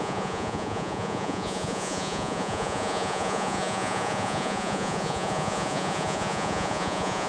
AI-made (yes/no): yes